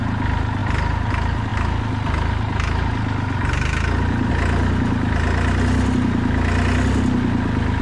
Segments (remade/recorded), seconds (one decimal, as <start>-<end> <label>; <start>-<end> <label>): 0.0-7.8 recorded